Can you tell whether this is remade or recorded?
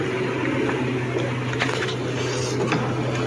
recorded